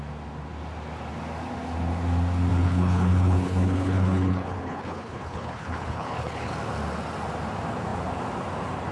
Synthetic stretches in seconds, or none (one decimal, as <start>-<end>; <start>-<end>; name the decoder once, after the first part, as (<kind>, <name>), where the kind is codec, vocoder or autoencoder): 2.5-6.5 (codec, HILCodec)